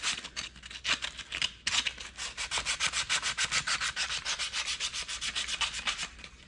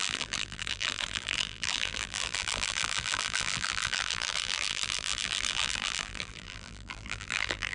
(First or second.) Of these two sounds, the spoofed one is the second